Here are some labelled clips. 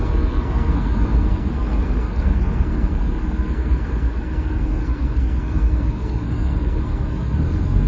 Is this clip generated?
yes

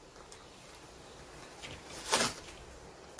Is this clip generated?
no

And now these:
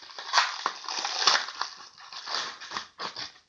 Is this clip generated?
no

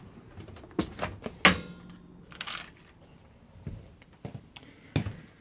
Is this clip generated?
no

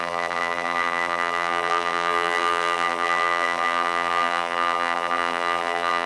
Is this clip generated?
yes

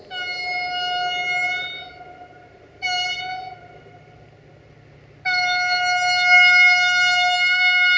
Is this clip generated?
no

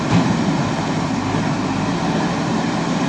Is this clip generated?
yes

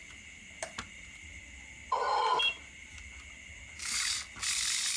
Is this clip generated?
no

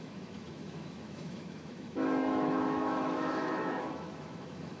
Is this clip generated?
yes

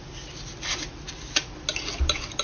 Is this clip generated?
no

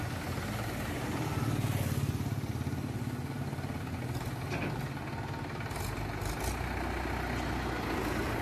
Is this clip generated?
no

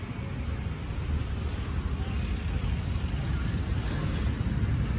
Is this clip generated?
no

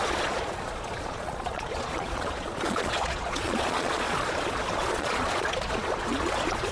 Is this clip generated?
yes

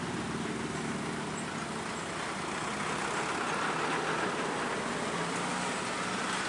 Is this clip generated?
no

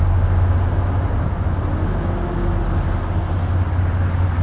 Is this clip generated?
no